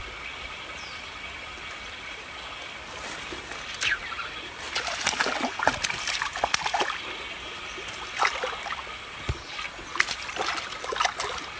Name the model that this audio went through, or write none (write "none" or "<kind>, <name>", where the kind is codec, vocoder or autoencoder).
none